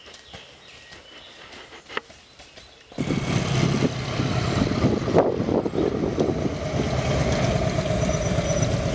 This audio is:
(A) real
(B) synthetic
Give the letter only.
A